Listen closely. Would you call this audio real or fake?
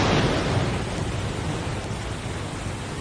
real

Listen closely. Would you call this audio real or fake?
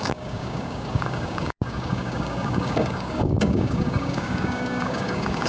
fake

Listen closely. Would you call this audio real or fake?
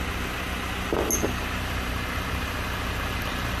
real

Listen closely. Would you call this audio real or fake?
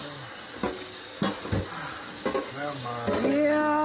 real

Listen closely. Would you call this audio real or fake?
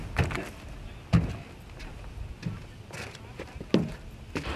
real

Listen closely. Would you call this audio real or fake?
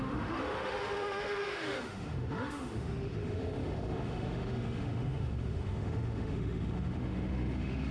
fake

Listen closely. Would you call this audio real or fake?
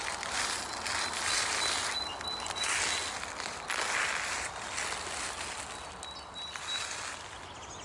real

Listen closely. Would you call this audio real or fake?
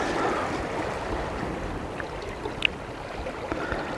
real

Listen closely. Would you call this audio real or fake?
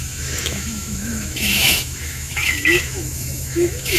fake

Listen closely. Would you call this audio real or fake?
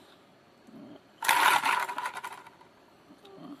real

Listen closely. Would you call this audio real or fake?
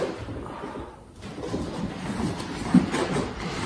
real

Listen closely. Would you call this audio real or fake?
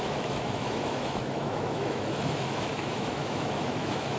fake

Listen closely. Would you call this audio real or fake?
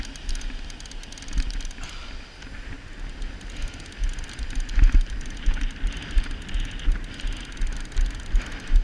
real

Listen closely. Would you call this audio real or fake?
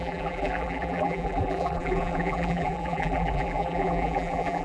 fake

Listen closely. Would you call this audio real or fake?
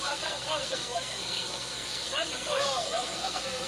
fake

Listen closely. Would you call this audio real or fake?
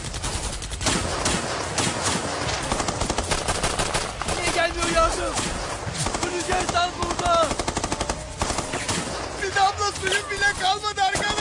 real